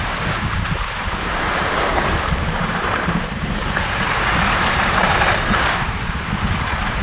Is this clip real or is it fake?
fake